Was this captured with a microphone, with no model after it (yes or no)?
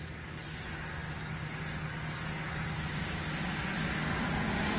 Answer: yes